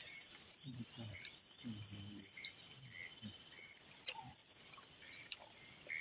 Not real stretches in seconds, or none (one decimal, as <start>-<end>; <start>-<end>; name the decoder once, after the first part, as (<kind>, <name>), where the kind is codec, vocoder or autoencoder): 0.0-0.7 (vocoder, BigVGAN v2)